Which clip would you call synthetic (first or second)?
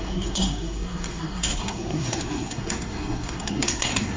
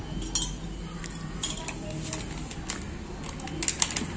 first